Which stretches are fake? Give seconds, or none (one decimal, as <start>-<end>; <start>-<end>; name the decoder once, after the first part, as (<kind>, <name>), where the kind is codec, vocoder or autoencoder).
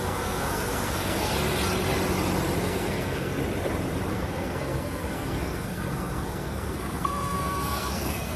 0.0-1.3 (codec, SNAC); 2.6-3.4; 4.1-8.4